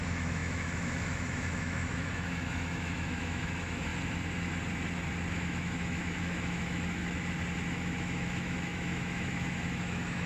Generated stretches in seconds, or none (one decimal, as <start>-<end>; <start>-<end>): 0.0-3.9; 5.3-7.0; 7.7-10.3